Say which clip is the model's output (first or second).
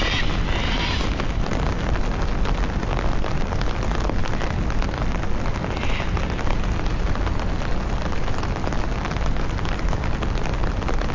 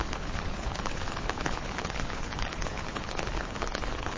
second